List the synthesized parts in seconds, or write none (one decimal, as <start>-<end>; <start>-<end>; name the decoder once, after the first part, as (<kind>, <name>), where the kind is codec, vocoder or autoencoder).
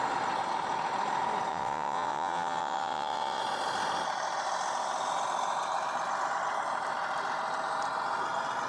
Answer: 1.5-3.4 (vocoder, WaveNeXt)